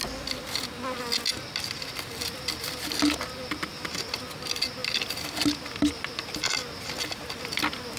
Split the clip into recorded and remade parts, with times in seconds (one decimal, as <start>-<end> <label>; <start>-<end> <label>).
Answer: 0.0-8.0 recorded